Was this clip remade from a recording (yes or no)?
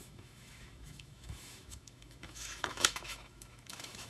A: yes